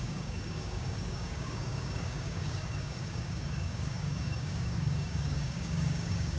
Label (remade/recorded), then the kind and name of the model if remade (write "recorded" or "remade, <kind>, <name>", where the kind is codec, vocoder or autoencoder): remade, codec, DAC